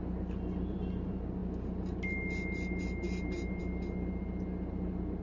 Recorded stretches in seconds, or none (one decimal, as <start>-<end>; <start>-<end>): 0.0-5.2